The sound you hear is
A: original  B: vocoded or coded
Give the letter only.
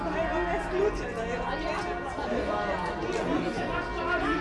A